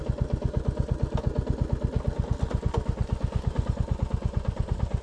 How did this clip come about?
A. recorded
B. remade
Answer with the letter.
A